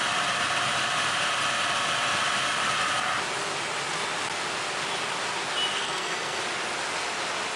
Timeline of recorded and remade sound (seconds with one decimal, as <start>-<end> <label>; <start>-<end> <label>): 0.0-5.7 recorded; 5.7-6.4 remade; 6.4-7.6 recorded